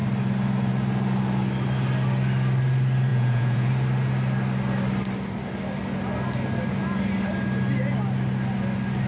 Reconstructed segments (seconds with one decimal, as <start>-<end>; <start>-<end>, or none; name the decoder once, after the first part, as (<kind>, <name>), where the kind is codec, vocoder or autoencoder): 3.1-3.7 (vocoder, Vocos)